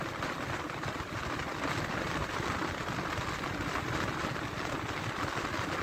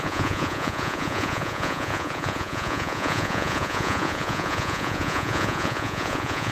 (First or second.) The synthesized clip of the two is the second